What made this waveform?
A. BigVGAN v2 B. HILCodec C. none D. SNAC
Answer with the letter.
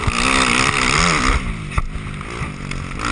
C